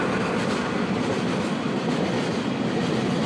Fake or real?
real